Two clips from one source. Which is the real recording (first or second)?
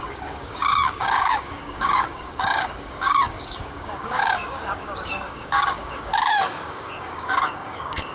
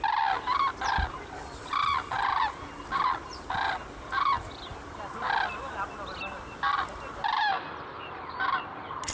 second